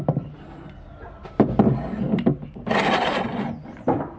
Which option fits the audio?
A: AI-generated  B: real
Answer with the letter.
B